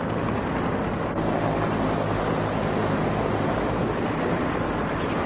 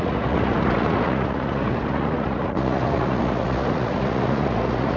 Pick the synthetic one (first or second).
second